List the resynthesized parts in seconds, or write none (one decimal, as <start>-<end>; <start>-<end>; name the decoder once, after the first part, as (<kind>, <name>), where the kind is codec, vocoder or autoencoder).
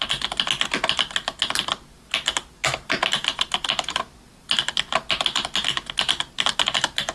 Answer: none